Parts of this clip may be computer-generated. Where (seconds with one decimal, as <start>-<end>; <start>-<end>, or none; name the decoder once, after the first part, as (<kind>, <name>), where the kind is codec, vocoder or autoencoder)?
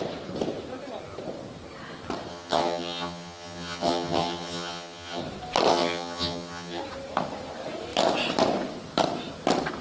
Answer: 2.3-5.2 (vocoder, HiFi-GAN); 5.7-6.8